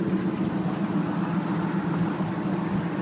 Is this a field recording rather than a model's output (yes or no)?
yes